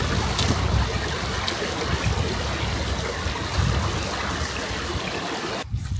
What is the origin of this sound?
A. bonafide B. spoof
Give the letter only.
A